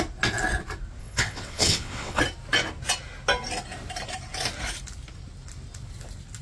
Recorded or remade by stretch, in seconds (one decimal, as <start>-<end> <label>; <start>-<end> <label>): 0.0-1.0 recorded; 1.0-2.2 remade; 2.2-6.4 recorded